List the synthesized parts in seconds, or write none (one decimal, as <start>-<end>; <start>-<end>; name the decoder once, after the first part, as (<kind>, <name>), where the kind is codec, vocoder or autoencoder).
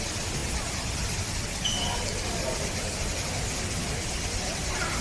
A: none